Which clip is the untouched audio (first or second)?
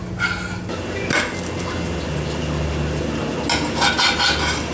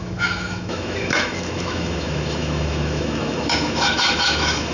first